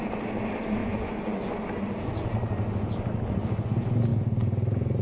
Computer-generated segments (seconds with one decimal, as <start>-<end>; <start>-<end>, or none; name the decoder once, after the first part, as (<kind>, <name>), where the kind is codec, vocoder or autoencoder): 0.8-1.5 (vocoder, Vocos)